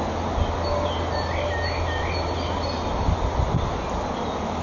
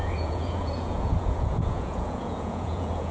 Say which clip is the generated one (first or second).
second